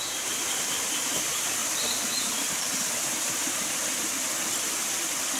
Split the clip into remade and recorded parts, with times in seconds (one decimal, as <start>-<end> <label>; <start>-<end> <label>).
0.0-3.8 remade; 3.8-5.4 recorded